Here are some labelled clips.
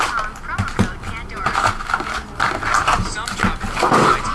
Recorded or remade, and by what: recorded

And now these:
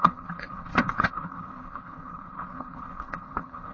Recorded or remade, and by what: remade, codec, HILCodec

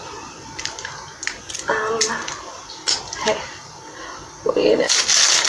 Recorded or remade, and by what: recorded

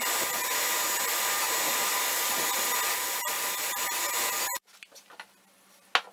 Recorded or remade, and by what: recorded